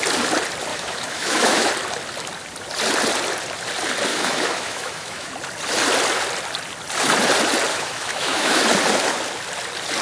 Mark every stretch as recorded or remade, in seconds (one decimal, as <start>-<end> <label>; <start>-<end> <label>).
0.0-0.7 recorded; 0.7-1.7 remade; 1.7-4.1 recorded; 4.1-5.3 remade; 5.3-7.7 recorded; 7.7-8.6 remade; 8.6-10.0 recorded